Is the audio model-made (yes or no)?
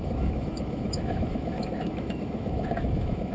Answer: yes